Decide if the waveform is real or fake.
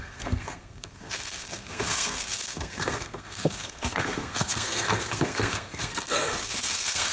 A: fake